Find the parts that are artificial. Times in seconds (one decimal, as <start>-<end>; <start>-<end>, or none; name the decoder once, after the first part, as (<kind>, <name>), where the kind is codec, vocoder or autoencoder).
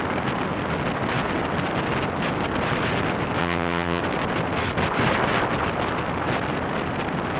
3.4-4.0 (vocoder, HiFi-GAN)